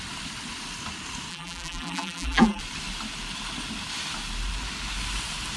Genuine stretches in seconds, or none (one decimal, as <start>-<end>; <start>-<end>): 0.0-1.3; 2.6-5.6